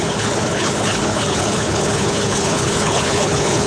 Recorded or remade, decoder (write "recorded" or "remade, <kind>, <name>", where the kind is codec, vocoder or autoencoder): remade, codec, HILCodec